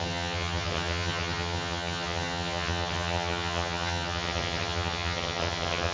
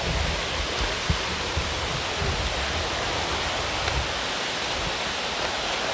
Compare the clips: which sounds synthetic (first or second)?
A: first